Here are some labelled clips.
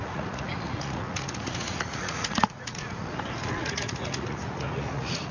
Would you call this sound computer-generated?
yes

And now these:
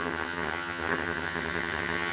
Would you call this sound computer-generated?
yes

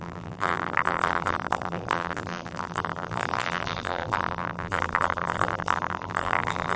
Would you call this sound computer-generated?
yes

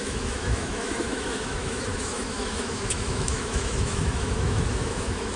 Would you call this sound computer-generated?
yes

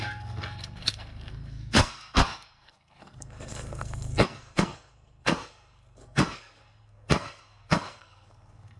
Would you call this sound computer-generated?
yes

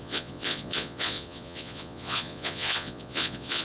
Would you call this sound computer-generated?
yes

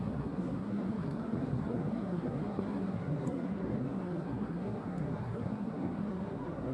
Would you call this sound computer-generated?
yes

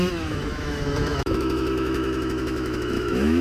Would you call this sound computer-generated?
yes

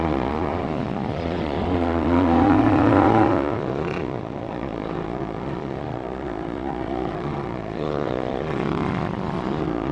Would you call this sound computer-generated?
yes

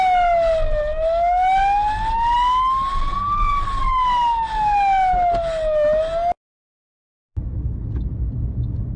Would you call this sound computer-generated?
no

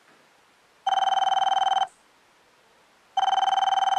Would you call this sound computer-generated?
no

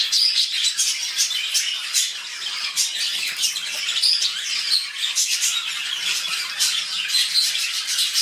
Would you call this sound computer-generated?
no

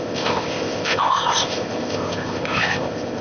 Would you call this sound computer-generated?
yes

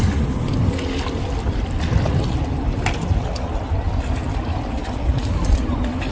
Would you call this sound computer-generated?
no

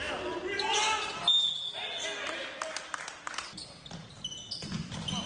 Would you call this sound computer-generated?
no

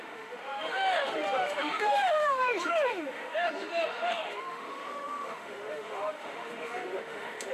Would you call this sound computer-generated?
yes